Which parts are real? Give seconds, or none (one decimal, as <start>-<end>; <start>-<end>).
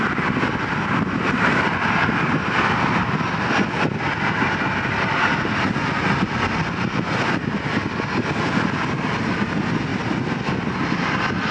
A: 0.0-11.5